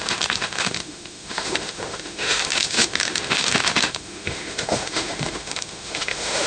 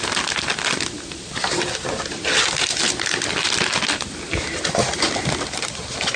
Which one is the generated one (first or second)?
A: first